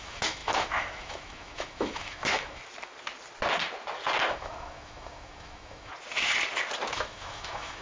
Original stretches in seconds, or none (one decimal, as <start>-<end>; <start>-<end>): 2.6-4.3; 5.9-6.9